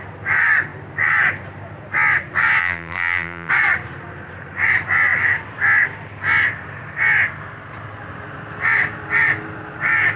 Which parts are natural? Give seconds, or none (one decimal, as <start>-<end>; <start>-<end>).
0.0-2.6; 3.5-10.2

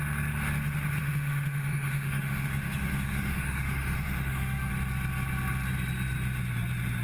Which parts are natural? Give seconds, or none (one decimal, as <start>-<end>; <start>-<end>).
0.0-1.0; 4.7-7.0

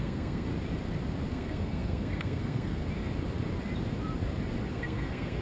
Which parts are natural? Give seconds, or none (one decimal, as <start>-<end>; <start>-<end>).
0.5-1.3; 2.8-4.7

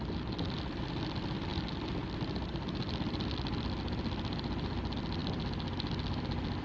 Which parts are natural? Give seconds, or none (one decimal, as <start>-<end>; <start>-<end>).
0.0-6.6

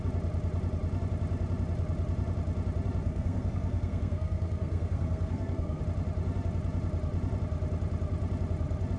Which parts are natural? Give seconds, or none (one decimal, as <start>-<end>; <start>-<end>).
0.0-3.0; 5.8-9.0

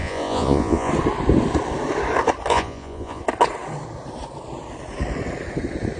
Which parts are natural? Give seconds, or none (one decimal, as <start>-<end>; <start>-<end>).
0.9-2.5; 3.2-6.0